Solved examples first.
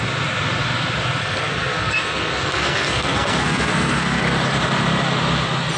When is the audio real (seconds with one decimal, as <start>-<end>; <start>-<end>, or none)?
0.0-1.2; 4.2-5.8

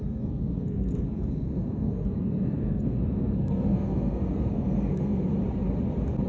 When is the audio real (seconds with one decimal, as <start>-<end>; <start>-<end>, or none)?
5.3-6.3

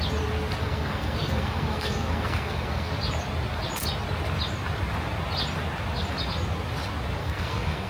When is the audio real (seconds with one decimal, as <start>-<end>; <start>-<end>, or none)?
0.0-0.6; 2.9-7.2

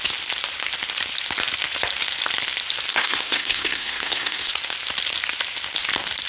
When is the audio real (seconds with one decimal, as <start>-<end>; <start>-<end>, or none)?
0.0-2.9; 4.5-6.3